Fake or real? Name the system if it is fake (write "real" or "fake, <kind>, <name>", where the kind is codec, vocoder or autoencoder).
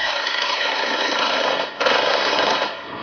fake, codec, SNAC